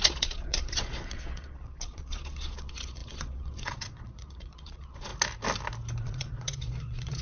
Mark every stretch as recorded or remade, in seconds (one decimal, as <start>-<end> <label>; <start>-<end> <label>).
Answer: 0.0-5.1 remade; 5.1-6.0 recorded; 6.0-7.2 remade

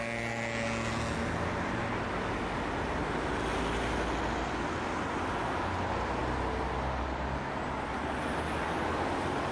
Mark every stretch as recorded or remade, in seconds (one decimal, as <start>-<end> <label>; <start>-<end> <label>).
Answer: 0.0-9.5 recorded

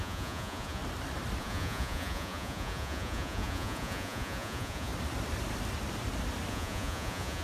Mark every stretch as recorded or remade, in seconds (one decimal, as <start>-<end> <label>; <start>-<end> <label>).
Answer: 0.0-0.8 remade; 0.8-1.4 recorded; 1.4-4.9 remade; 4.9-6.5 recorded; 6.5-7.4 remade

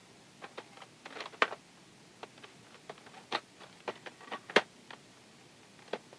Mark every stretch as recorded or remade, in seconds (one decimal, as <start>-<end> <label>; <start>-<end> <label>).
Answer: 0.0-6.2 recorded

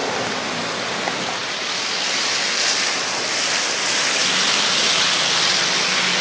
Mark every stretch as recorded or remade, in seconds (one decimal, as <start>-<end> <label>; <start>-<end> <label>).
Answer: 0.0-0.6 remade; 0.6-1.4 recorded; 1.4-4.7 remade; 4.7-6.2 recorded

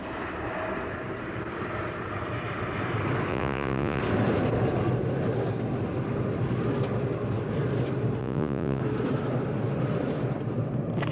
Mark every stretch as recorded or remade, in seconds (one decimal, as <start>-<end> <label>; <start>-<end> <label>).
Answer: 0.0-3.3 recorded; 3.3-4.0 remade; 4.0-8.2 recorded; 8.2-8.8 remade; 8.8-11.1 recorded